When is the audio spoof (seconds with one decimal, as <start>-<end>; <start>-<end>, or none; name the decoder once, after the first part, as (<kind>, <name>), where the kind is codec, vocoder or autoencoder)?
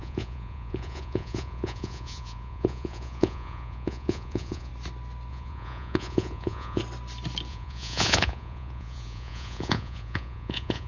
0.0-4.7 (vocoder, Vocos); 5.3-6.8; 7.5-10.9